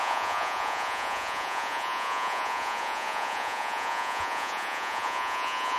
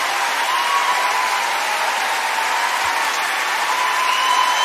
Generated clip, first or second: first